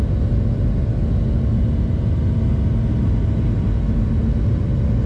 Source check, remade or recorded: recorded